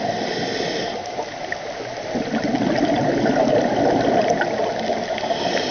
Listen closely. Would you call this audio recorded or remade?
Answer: recorded